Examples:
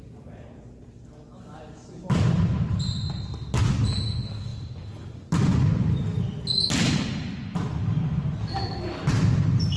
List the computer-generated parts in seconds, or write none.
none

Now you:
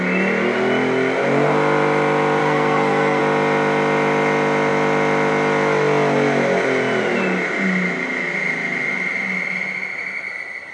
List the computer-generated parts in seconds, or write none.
2.4-3.2

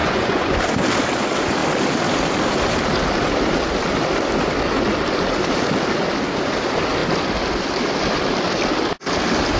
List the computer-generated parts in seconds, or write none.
0.0-0.6

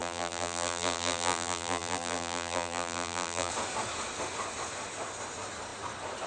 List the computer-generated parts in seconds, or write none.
0.0-3.5

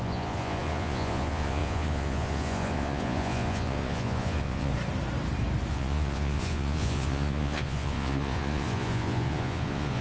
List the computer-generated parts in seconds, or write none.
0.0-4.7; 5.7-10.0

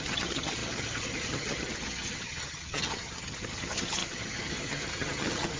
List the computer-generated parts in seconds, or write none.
0.0-5.6

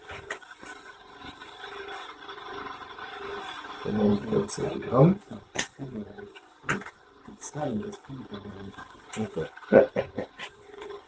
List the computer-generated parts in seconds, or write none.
0.0-4.1; 5.2-7.7; 8.5-11.1